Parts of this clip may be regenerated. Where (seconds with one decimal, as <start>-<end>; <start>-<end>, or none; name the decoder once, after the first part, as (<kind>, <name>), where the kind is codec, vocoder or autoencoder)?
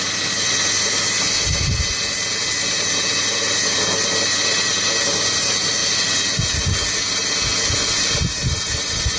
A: none